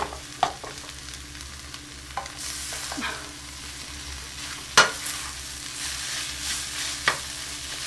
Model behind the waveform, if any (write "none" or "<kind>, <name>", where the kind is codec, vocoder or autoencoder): none